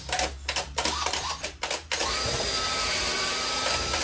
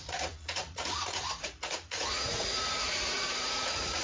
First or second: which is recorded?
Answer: first